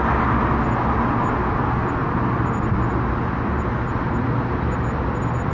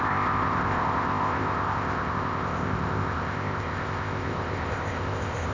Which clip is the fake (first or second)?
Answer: second